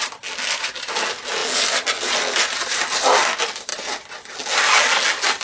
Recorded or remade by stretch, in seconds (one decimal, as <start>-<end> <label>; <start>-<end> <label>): 0.0-5.4 recorded